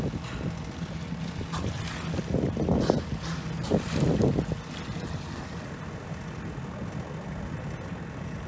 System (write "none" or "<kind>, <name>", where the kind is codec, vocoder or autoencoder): none